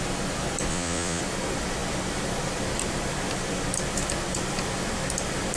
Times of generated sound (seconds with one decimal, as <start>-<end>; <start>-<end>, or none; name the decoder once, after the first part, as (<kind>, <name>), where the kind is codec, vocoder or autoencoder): 0.7-1.2 (vocoder, Vocos)